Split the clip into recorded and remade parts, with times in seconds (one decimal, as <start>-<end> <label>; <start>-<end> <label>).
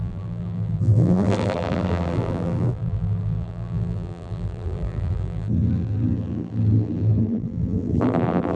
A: 0.0-8.6 remade